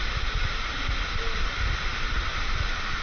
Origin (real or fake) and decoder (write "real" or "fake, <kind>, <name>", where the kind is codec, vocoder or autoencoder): real